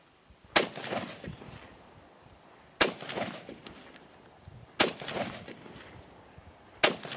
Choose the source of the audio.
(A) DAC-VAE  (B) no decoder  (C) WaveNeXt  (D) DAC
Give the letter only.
B